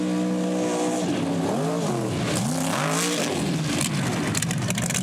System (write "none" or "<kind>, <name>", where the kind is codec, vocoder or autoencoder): none